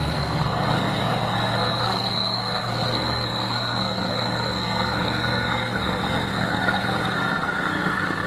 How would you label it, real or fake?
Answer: fake